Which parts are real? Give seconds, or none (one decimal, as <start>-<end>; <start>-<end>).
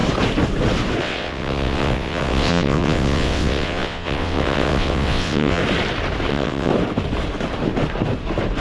0.0-1.0; 5.6-6.3; 6.7-8.6